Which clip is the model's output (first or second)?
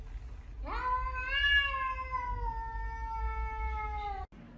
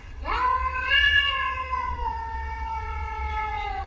second